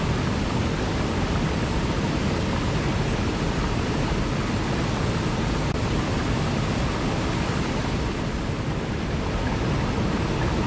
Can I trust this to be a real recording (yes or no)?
yes